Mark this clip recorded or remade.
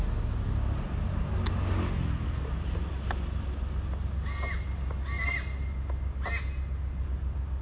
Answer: recorded